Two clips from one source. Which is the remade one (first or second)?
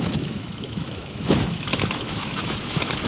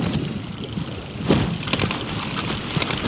first